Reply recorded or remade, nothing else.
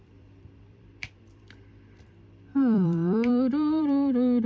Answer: remade